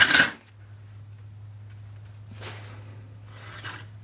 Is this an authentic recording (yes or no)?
yes